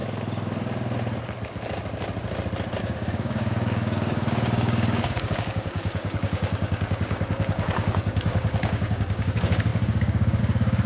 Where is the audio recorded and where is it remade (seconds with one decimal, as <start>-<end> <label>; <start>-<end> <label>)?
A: 0.0-2.8 recorded; 2.8-10.9 remade